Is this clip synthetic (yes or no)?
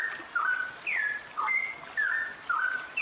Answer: no